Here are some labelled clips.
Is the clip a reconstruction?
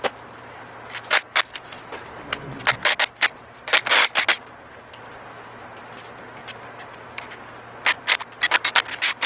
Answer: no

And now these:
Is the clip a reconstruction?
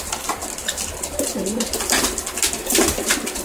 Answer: no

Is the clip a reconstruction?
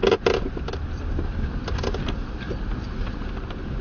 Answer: no